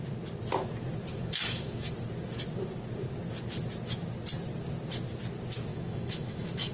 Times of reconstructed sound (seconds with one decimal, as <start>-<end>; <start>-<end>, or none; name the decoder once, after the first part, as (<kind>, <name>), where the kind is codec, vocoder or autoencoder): 1.1-1.9 (autoencoder, DAC-VAE); 5.7-6.7